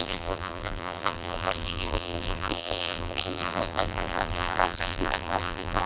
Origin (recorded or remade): remade